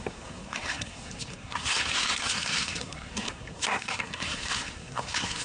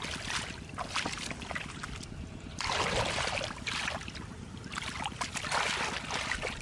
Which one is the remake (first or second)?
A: first